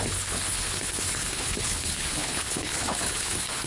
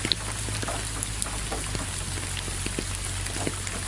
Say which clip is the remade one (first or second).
first